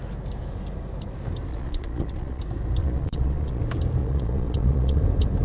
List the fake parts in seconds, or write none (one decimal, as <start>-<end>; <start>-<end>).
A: 1.5-2.4; 2.8-3.6; 4.0-5.0